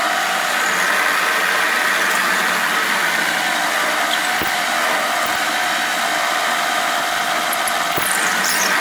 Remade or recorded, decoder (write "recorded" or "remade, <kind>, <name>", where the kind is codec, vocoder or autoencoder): remade, vocoder, BigVGAN v2